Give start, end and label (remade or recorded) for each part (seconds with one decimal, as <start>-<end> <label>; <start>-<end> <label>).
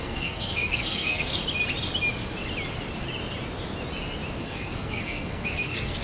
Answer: 0.0-1.4 remade; 1.4-4.4 recorded; 4.4-6.0 remade